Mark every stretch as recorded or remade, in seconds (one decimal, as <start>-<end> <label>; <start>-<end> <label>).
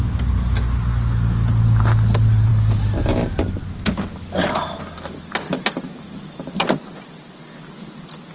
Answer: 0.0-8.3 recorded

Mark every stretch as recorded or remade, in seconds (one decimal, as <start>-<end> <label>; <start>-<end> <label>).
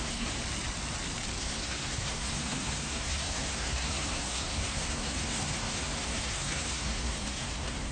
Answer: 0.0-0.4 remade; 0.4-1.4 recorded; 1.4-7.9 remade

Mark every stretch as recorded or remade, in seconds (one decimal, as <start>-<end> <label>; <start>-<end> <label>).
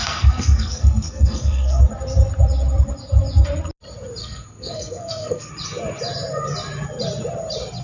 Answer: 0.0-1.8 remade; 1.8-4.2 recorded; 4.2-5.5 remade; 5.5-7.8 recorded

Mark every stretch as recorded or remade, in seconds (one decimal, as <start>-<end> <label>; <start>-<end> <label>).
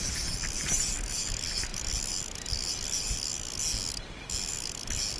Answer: 0.0-3.3 remade; 3.3-4.4 recorded; 4.4-5.2 remade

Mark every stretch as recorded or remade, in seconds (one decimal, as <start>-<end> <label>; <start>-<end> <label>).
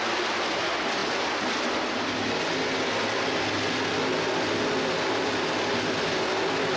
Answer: 0.0-6.8 recorded